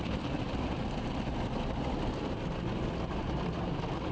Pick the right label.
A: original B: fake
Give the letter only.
A